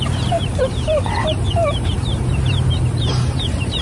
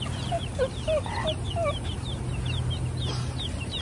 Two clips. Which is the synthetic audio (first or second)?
first